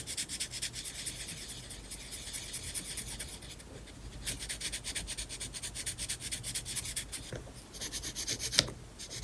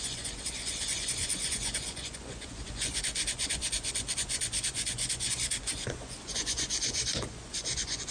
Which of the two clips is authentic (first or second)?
first